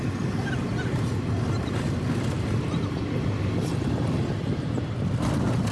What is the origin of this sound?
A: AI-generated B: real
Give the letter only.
B